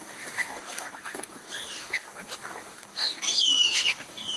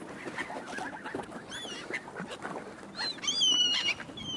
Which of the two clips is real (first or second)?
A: second